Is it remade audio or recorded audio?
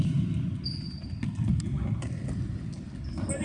recorded